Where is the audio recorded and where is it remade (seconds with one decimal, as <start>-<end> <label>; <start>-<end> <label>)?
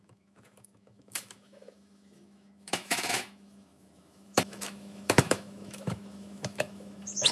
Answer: 0.0-7.3 remade